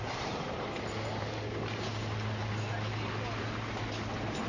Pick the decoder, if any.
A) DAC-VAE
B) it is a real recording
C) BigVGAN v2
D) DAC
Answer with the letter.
B